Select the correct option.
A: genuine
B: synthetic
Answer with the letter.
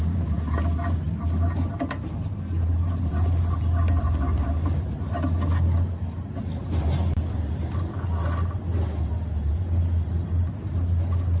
A